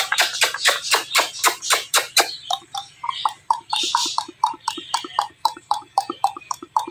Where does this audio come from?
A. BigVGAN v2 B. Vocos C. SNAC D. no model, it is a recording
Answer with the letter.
A